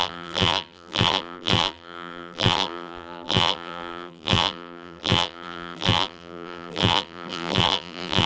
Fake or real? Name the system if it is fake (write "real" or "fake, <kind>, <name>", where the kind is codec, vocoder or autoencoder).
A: fake, vocoder, BigVGAN v2